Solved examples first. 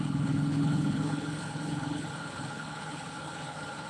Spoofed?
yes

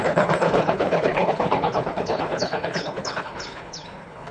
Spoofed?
yes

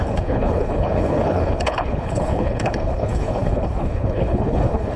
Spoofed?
yes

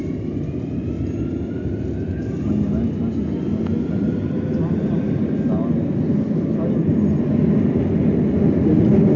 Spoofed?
no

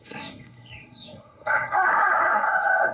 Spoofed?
yes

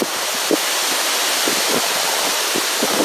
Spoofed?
no